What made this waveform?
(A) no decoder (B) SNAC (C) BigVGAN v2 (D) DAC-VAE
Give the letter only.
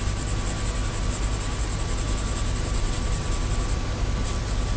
A